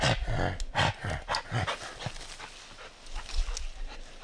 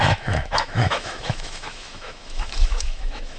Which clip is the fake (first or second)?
second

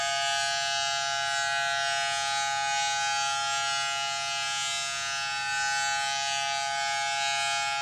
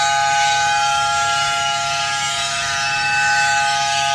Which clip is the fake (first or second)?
second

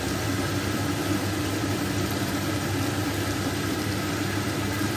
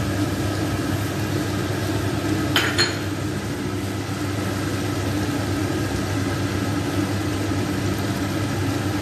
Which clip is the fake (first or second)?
first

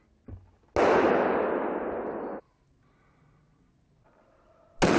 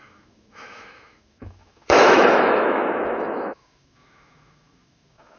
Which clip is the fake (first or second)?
second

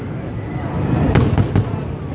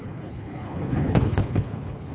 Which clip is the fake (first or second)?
second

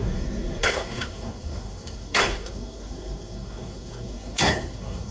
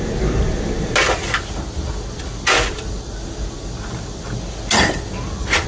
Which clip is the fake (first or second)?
first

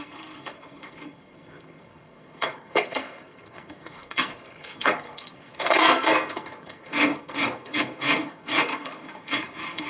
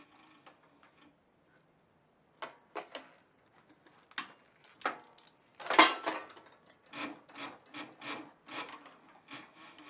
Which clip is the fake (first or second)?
first